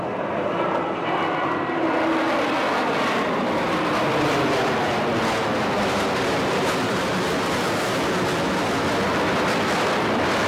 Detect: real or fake fake